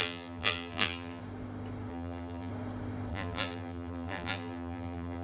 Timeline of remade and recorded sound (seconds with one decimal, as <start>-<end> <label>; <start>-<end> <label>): 0.0-1.2 remade; 1.2-1.9 recorded; 1.9-2.5 remade; 2.5-3.1 recorded; 3.1-5.2 remade